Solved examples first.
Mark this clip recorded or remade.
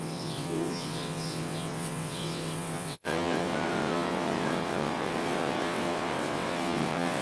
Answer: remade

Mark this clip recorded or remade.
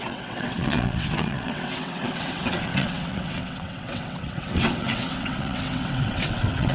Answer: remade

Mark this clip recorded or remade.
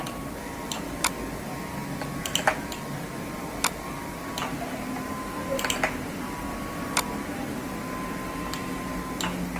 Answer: recorded